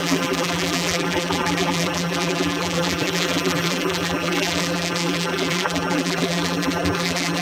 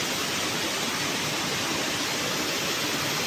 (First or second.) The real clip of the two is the second